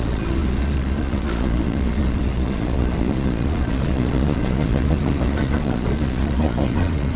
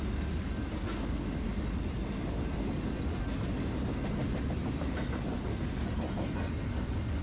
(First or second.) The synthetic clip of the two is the first